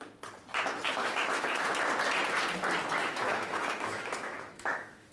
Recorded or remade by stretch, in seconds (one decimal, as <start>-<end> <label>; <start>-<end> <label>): 0.0-1.0 recorded; 1.0-1.6 remade; 1.6-3.0 recorded; 3.0-5.1 remade